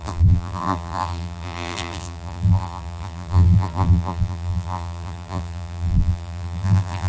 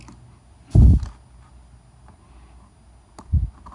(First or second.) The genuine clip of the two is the second